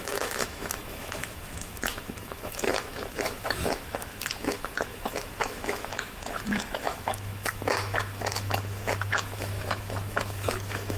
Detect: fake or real fake